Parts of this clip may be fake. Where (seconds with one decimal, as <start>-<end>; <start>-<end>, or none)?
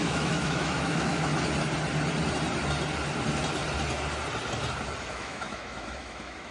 0.0-1.3; 5.1-6.5